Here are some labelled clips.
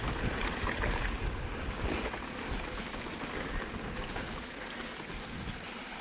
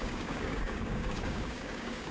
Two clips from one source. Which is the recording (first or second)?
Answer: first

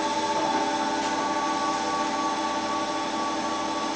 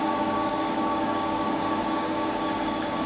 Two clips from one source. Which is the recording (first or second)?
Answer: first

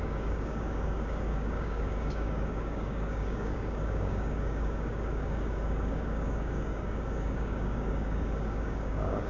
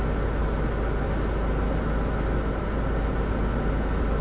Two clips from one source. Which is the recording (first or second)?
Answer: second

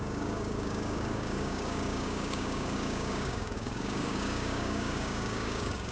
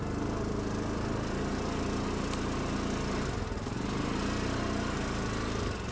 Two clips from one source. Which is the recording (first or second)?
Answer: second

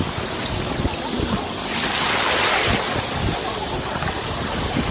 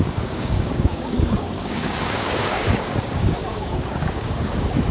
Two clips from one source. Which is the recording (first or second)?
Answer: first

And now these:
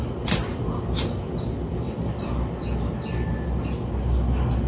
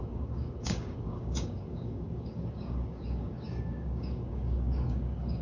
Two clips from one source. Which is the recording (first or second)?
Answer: first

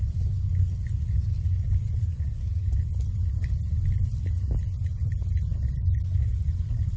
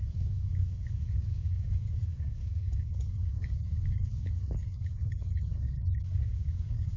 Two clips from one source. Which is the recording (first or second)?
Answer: first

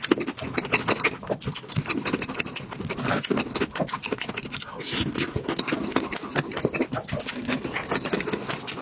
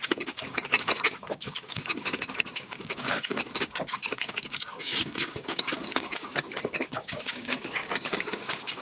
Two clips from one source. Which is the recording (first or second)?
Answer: first